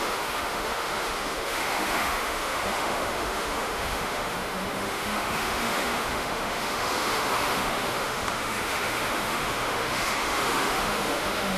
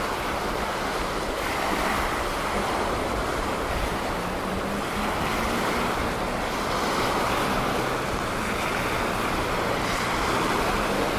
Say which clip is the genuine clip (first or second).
second